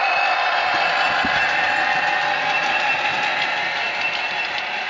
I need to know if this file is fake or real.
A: real